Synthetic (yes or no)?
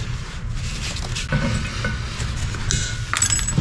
no